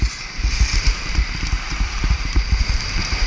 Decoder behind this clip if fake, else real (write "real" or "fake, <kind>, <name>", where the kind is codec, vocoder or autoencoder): fake, vocoder, BigVGAN v2